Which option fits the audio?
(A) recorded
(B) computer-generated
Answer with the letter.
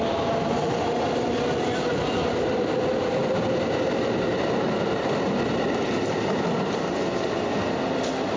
A